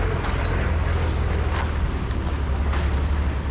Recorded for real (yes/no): yes